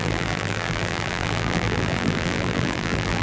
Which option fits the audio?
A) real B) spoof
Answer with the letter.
B